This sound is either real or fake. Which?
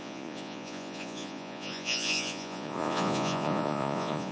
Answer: fake